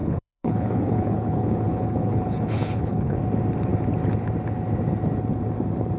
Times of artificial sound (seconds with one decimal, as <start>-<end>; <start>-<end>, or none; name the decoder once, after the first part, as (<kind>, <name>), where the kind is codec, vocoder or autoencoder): 0.0-3.2 (codec, HILCodec)